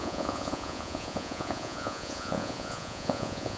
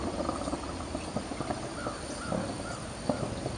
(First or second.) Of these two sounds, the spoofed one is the first